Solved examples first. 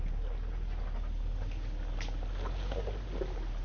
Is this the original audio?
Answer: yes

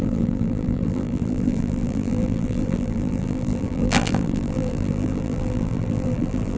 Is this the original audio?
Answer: no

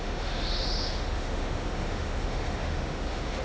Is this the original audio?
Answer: no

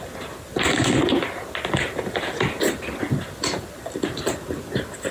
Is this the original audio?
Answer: yes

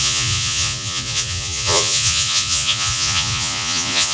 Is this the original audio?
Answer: no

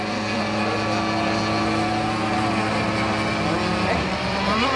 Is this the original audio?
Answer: yes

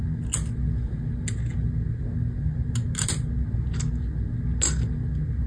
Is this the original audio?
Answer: yes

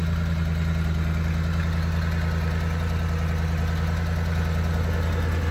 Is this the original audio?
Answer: yes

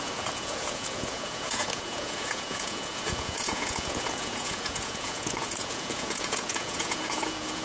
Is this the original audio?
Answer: no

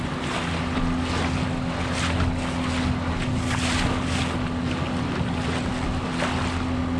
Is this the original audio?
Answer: yes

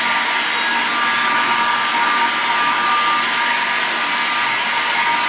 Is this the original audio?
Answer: yes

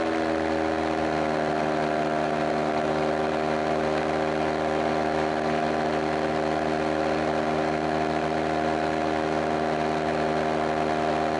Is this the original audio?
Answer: yes